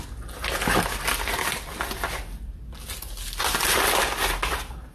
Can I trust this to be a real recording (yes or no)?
yes